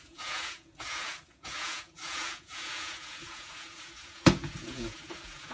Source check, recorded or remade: remade